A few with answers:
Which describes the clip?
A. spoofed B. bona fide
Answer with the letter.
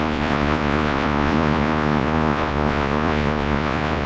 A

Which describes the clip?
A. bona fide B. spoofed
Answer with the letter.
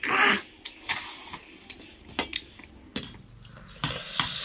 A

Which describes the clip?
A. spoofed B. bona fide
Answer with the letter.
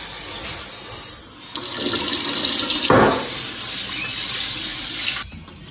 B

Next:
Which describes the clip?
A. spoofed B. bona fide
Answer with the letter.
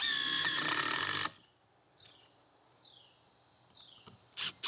B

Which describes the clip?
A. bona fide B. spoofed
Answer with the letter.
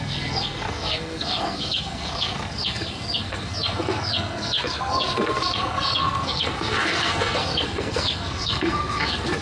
B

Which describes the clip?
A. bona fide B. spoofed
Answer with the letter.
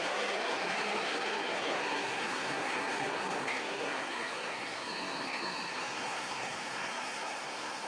B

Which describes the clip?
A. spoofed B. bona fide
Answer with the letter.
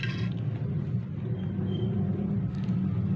B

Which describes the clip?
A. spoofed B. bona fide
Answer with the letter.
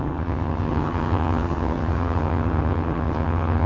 A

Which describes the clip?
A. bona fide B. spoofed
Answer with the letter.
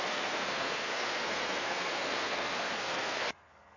B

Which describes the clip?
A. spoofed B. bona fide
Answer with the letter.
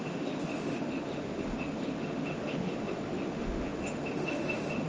A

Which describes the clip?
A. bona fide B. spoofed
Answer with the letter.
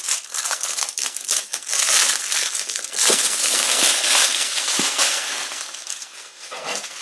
B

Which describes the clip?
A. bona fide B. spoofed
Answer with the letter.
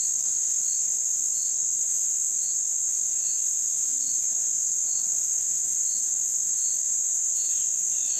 B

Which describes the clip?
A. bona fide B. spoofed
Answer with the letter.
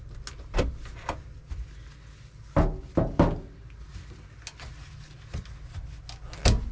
A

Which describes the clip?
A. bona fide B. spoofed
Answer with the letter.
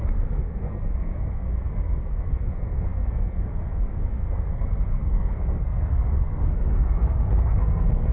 B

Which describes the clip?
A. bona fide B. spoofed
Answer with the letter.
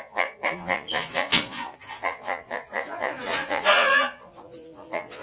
B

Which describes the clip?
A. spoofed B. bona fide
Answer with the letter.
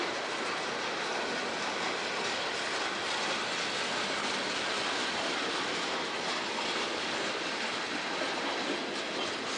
B